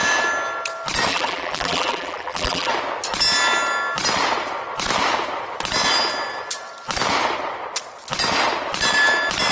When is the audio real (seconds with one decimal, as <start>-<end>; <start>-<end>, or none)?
0.0-1.1; 2.7-9.5